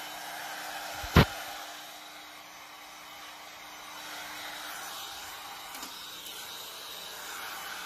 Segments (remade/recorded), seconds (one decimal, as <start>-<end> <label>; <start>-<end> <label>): 0.0-7.9 recorded